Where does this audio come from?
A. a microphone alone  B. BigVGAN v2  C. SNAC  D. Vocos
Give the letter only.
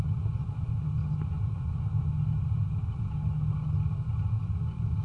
A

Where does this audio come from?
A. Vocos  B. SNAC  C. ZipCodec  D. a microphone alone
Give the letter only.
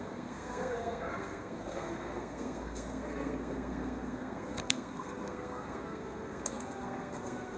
B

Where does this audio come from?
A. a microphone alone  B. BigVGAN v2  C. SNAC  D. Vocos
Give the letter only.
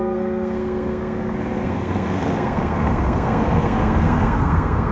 C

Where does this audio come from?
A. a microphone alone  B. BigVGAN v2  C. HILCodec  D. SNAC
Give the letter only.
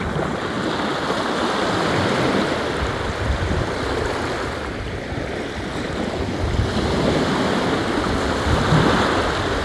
A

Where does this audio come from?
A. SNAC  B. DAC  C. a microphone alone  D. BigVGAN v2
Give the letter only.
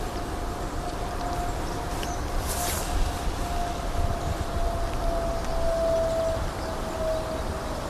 C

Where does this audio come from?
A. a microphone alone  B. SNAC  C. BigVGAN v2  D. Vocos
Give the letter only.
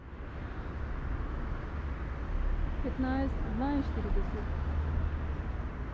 A